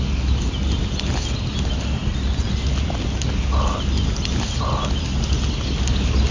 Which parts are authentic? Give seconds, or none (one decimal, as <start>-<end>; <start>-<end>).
0.0-6.3